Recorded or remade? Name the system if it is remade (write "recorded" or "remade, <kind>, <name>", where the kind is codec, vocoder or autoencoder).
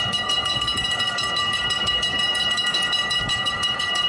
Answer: remade, codec, DAC